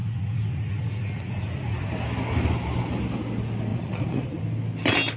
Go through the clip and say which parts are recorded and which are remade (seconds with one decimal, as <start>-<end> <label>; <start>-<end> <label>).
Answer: 0.0-1.9 remade; 1.9-3.7 recorded; 3.7-4.4 remade; 4.4-5.2 recorded